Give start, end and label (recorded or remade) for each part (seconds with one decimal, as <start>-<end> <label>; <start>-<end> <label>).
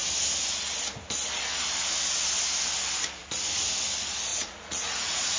0.0-4.3 recorded; 4.3-5.4 remade